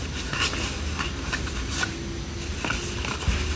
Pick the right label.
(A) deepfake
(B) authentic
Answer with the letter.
B